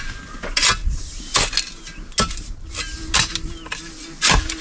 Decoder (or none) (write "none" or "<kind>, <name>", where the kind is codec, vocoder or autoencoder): none